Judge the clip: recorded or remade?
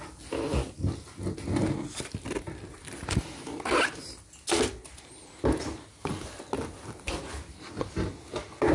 recorded